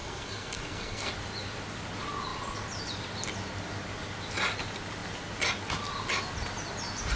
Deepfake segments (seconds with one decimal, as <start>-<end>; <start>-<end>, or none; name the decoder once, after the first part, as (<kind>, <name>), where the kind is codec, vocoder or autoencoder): 0.0-1.1 (codec, SNAC)